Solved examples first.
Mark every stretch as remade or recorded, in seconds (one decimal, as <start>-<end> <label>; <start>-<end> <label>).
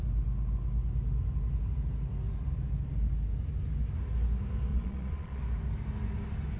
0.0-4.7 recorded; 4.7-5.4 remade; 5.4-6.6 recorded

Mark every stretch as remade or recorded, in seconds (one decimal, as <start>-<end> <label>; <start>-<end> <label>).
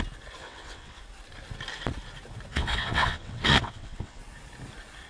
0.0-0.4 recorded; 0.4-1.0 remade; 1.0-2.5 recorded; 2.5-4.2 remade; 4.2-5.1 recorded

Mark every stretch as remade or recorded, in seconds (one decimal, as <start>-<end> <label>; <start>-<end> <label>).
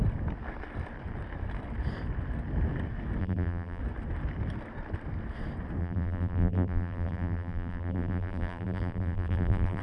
0.0-3.2 recorded; 3.2-3.8 remade; 3.8-5.8 recorded; 5.8-9.8 remade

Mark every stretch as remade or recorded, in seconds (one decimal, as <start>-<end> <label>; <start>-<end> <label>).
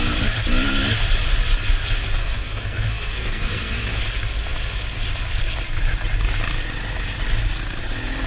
0.0-2.2 recorded; 2.2-4.0 remade; 4.0-8.3 recorded